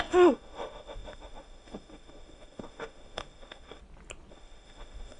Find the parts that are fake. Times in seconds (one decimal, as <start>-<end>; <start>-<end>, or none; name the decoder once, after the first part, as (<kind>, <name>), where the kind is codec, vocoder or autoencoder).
0.0-3.8 (autoencoder, DAC-VAE); 4.3-5.2